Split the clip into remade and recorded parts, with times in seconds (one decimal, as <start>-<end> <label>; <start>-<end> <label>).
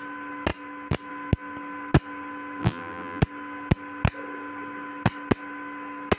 0.0-2.6 recorded; 2.6-3.2 remade; 3.2-6.2 recorded